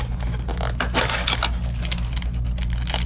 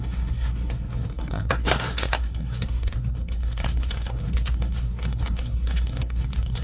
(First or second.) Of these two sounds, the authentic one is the first